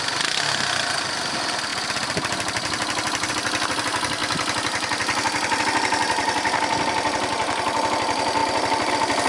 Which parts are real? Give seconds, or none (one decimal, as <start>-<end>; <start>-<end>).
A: 0.0-9.3